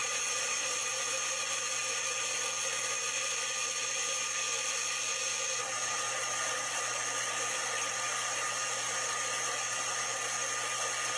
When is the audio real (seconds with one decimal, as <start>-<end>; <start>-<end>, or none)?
0.8-11.2